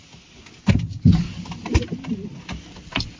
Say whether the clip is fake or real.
real